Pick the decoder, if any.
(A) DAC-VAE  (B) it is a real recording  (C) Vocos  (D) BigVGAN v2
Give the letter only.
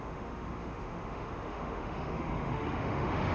A